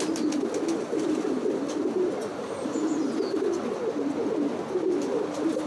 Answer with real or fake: real